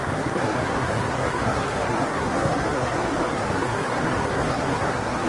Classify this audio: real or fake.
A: fake